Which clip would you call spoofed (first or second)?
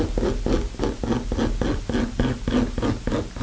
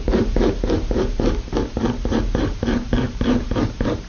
second